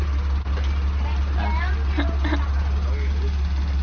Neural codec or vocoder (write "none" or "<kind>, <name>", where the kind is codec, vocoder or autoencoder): none